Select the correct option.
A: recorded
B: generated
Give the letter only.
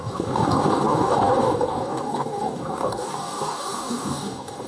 B